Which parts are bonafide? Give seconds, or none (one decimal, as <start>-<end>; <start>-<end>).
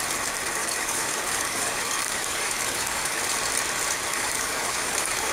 0.0-0.6; 3.2-4.1